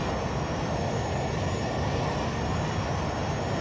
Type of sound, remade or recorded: recorded